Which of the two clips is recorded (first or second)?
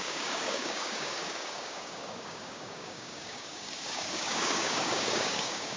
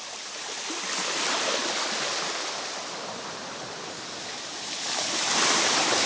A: second